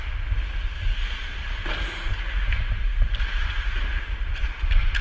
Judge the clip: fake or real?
real